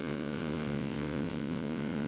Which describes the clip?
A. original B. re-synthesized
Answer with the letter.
B